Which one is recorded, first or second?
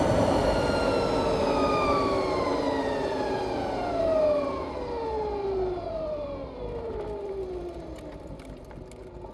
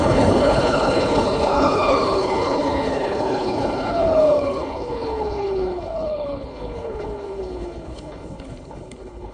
first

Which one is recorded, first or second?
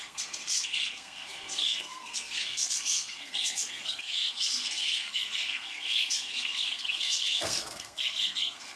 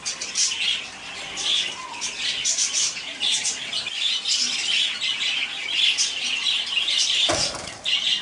second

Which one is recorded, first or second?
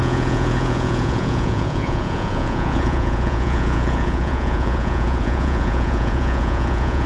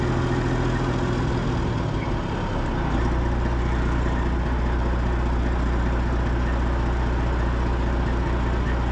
second